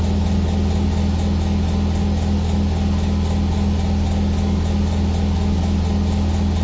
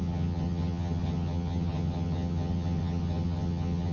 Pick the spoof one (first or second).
second